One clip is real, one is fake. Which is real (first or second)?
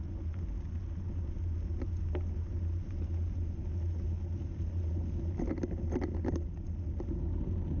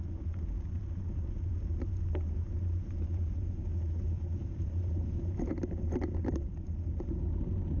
first